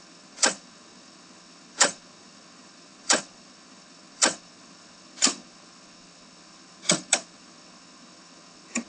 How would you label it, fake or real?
fake